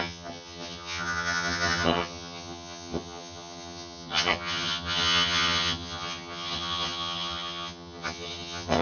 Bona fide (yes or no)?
no